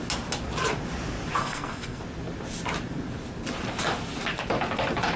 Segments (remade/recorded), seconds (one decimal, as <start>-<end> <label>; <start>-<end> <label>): 0.0-1.4 recorded; 1.4-2.0 remade; 2.0-5.2 recorded

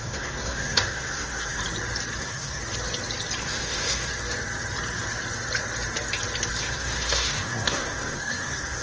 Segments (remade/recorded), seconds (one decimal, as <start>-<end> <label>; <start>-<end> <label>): 0.0-1.6 remade; 1.6-2.2 recorded; 2.2-2.6 remade; 2.6-3.4 recorded; 3.4-4.1 remade; 4.1-6.6 recorded; 6.6-8.8 remade

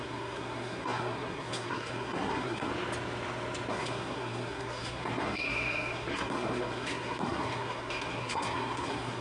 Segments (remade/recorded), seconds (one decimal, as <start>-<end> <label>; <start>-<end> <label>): 0.0-2.7 remade; 2.7-3.7 recorded; 3.7-9.2 remade

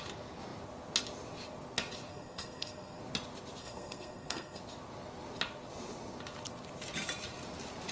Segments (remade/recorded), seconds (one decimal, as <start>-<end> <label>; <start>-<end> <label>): 0.0-2.1 recorded; 2.1-3.0 remade; 3.0-3.6 recorded; 3.6-4.6 remade; 4.6-7.9 recorded

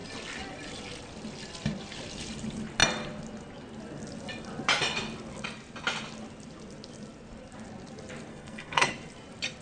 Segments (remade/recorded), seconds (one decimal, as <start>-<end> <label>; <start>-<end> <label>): 0.0-8.3 recorded; 8.3-8.9 remade; 8.9-9.6 recorded

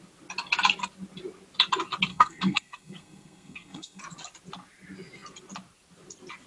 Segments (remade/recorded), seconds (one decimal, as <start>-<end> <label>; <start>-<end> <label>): 0.0-2.1 recorded; 2.1-4.0 remade; 4.0-6.5 recorded